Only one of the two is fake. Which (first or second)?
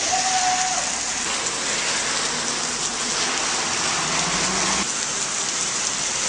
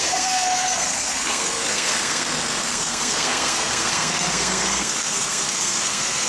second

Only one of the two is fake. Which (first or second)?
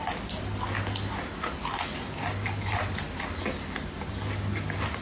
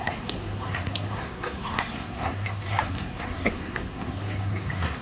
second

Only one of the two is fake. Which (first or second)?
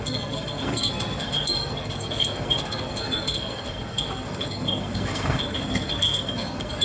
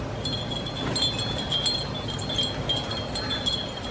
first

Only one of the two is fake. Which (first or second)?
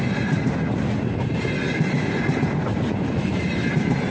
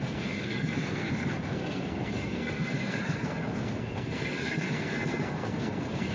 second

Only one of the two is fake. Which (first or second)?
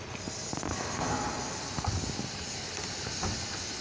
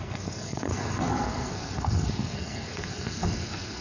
second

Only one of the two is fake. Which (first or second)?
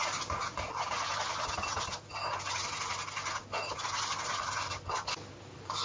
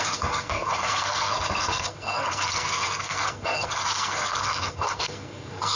second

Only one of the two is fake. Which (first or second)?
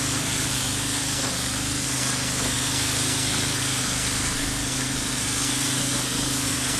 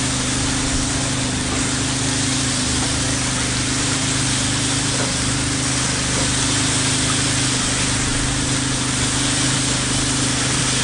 first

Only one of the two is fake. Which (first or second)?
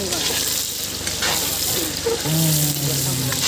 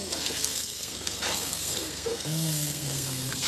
second